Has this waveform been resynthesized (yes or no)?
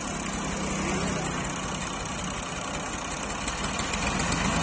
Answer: no